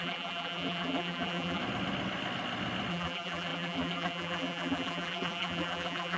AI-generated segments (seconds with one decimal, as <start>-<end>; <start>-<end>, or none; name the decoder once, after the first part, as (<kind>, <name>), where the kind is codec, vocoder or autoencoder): 0.0-1.6 (vocoder, BigVGAN v2); 2.9-6.2